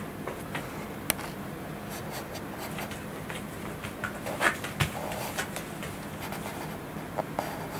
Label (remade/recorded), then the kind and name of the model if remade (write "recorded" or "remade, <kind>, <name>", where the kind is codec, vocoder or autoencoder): recorded